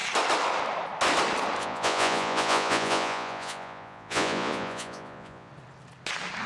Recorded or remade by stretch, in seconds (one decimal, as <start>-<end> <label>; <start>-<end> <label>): 0.0-1.6 recorded; 1.6-5.5 remade; 5.5-6.5 recorded